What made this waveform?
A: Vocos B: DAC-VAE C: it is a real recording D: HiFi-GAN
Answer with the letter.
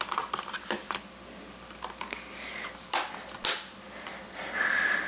C